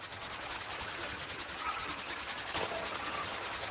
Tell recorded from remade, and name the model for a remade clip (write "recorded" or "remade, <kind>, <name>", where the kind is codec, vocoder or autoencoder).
remade, vocoder, HiFi-GAN